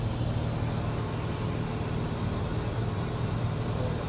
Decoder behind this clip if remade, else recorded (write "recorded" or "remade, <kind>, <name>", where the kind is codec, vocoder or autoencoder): recorded